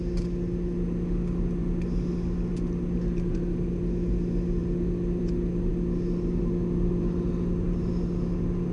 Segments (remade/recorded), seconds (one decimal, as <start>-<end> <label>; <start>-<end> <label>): 0.0-8.7 recorded